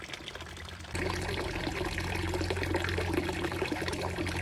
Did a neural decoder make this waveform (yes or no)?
no